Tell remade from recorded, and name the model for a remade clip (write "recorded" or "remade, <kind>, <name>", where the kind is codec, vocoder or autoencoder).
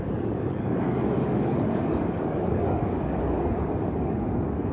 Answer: remade, codec, DAC